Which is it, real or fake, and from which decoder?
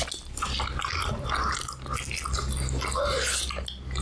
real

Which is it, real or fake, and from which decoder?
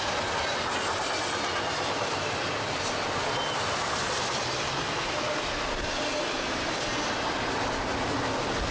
real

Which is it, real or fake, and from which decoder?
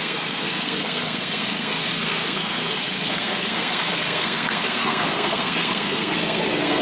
fake, codec, SNAC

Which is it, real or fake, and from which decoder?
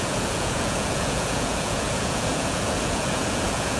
fake, vocoder, Vocos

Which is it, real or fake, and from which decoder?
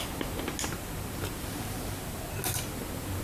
real